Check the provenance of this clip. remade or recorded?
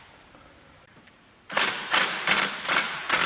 remade